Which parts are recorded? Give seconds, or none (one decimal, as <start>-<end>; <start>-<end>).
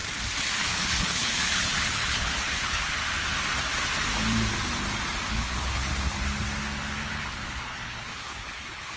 0.0-0.5; 3.0-5.3; 5.9-7.0